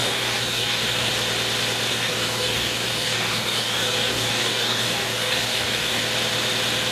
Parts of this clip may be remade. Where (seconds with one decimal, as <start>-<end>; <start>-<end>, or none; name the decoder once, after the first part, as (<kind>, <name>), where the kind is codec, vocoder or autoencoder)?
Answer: 0.0-1.1 (codec, DAC); 1.9-6.0